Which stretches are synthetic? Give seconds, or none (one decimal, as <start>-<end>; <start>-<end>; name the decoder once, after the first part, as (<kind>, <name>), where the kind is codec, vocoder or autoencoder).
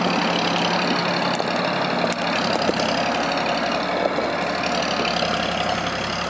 none